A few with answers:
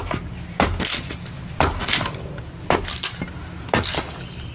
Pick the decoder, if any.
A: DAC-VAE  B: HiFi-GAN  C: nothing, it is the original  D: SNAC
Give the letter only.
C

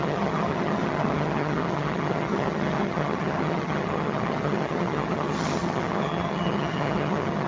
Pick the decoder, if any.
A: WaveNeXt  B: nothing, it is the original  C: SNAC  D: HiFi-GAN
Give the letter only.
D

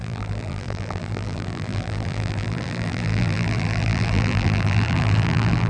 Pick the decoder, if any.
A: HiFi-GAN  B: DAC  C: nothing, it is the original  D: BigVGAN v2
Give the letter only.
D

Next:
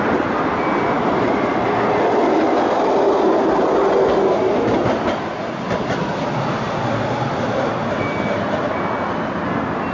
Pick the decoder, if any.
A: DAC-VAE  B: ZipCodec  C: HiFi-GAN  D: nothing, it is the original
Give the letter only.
D